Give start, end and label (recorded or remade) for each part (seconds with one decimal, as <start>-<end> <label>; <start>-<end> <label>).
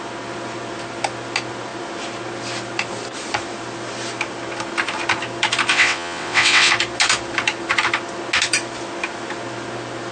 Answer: 0.0-5.7 recorded; 5.7-6.7 remade; 6.7-10.1 recorded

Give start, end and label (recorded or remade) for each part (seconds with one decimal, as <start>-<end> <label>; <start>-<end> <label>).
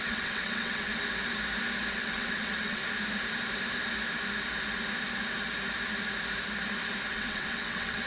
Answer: 0.0-0.9 remade; 0.9-1.9 recorded; 1.9-2.8 remade; 2.8-7.1 recorded; 7.1-8.1 remade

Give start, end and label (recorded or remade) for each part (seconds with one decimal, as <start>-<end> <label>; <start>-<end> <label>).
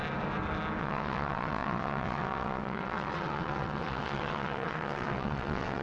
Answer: 0.0-0.8 recorded; 0.8-5.8 remade